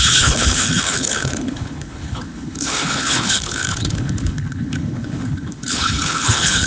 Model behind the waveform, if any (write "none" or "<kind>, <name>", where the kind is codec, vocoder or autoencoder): codec, HILCodec